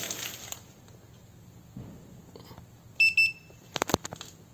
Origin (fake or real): real